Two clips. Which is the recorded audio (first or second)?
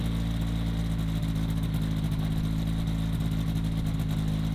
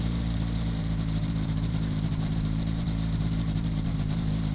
first